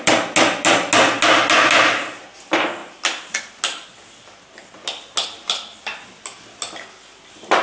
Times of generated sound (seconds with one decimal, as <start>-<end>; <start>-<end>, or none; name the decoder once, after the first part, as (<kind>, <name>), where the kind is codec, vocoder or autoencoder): none